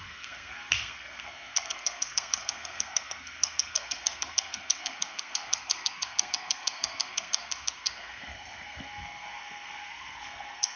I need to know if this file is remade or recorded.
remade